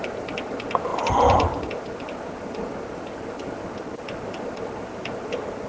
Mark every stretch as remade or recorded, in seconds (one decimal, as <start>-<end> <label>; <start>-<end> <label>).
0.0-0.5 remade; 0.5-5.7 recorded